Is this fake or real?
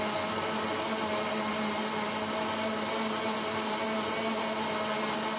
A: real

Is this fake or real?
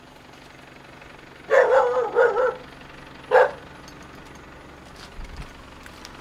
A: real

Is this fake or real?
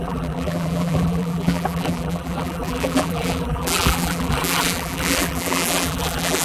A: fake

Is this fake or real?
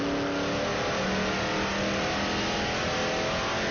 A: real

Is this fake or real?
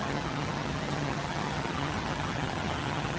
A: fake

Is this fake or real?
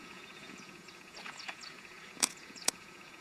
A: fake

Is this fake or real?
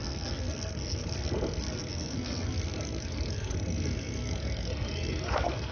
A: fake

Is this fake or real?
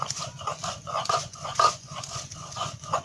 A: fake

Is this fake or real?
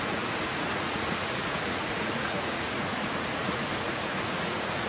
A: fake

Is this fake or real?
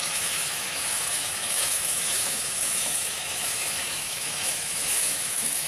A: fake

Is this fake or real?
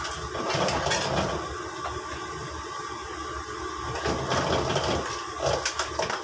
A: real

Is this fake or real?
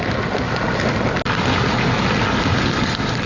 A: real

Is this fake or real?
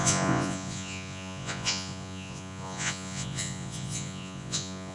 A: fake